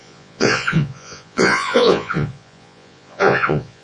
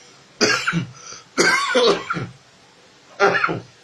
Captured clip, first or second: second